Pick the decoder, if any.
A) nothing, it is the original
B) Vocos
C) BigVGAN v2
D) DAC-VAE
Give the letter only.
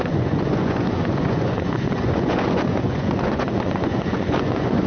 B